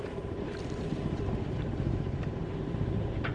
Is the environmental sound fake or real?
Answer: fake